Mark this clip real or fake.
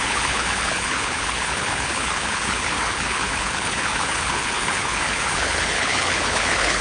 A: fake